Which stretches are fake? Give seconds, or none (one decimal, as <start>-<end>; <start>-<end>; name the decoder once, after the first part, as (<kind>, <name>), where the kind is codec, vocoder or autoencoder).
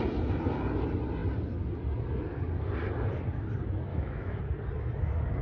3.9-4.4 (autoencoder, DAC-VAE)